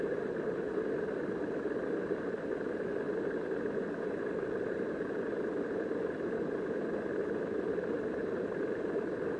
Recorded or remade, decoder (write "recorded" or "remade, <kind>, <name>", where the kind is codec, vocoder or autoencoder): recorded